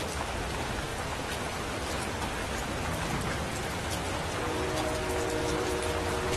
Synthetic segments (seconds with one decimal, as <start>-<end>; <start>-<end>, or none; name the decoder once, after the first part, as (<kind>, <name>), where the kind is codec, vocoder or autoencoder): none